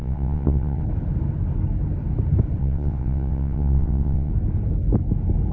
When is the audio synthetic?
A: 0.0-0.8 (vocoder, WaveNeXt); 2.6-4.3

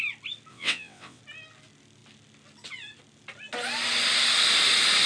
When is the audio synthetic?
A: 0.5-1.2 (vocoder, WaveNeXt)

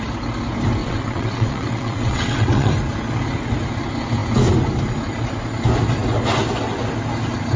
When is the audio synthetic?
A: 0.8-2.7 (vocoder, WaveNeXt)

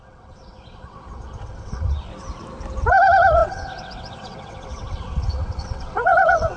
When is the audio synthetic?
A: 0.0-2.1 (vocoder, WaveNeXt); 2.9-6.6

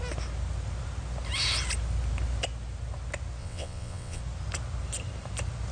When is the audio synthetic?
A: 3.4-4.2 (vocoder, WaveNeXt)

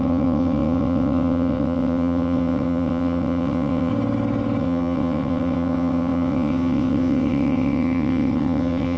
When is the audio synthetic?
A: 0.0-3.9 (vocoder, WaveNeXt); 4.6-9.0

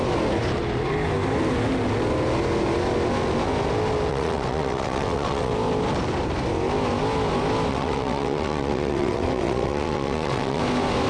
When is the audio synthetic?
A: 4.1-5.5 (vocoder, WaveNeXt); 7.7-10.6